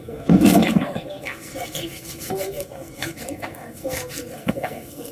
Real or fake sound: fake